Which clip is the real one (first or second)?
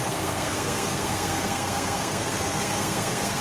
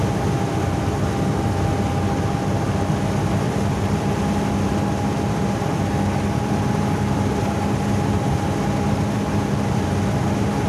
second